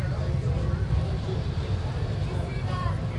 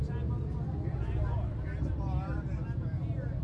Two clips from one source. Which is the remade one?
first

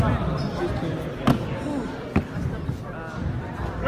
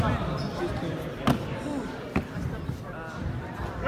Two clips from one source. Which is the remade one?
second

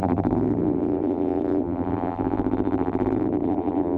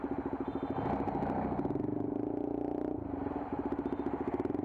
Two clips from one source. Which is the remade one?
first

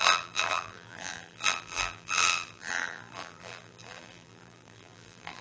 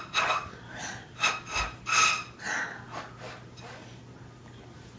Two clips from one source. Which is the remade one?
first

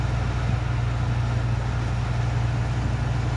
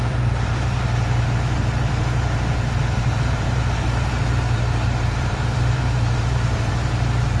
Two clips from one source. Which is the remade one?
second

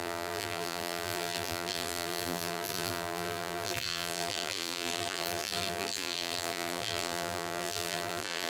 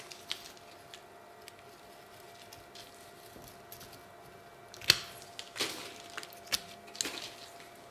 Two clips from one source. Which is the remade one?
first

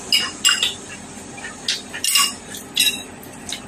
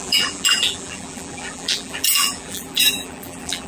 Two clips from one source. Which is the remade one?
second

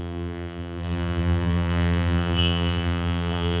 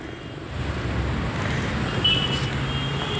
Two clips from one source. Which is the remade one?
first